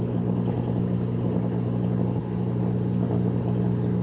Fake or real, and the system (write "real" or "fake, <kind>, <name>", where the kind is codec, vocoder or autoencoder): real